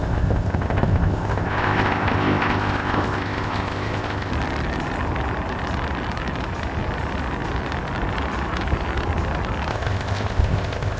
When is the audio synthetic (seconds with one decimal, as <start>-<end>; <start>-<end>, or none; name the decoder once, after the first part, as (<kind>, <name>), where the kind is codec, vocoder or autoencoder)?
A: 0.0-4.3 (codec, ZipCodec); 9.7-11.0